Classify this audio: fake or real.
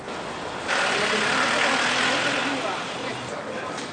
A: real